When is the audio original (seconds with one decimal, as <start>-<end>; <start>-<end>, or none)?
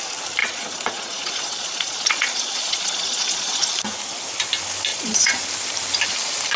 0.0-0.4; 3.7-4.9; 5.4-6.6